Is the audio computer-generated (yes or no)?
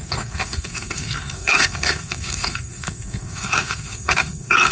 yes